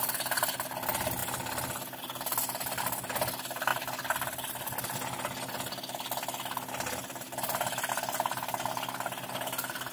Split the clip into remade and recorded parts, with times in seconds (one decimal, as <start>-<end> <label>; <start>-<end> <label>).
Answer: 0.0-9.9 recorded